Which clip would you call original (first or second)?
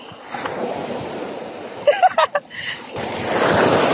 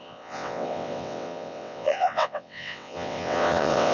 first